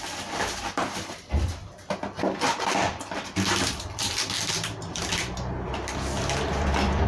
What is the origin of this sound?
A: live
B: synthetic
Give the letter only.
B